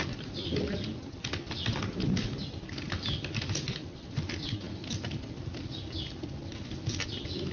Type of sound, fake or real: real